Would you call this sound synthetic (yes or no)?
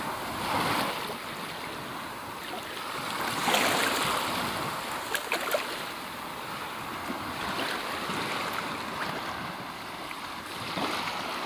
no